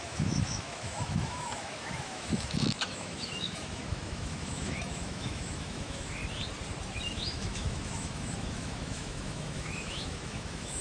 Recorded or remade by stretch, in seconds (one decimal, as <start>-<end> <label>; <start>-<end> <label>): 0.0-6.2 remade; 6.2-6.9 recorded; 6.9-10.8 remade